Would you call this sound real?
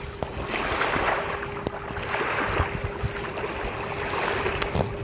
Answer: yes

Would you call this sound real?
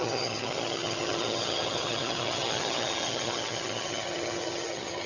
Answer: no